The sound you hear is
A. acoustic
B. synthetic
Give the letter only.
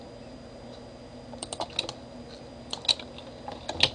A